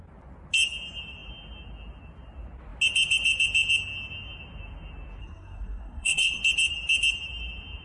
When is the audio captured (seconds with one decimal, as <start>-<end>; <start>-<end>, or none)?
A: 0.0-5.2; 6.4-7.8